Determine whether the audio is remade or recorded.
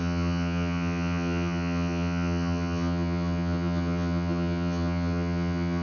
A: remade